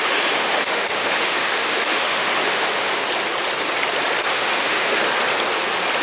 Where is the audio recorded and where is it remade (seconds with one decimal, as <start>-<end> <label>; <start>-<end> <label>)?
0.0-3.0 remade; 3.0-4.3 recorded; 4.3-4.9 remade; 4.9-6.0 recorded